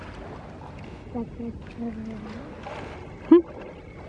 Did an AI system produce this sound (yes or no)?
no